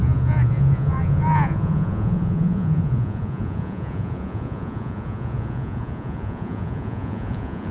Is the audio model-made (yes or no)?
yes